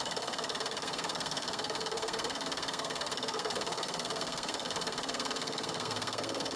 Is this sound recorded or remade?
remade